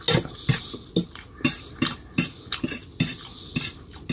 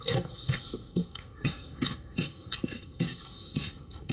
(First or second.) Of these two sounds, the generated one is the second